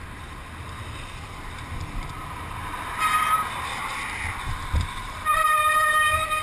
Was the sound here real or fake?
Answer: real